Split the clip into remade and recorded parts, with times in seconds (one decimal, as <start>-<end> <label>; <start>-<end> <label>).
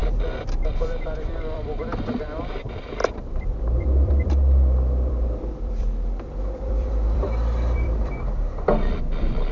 0.0-0.7 recorded; 0.7-9.5 remade